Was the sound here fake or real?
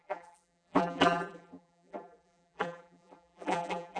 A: fake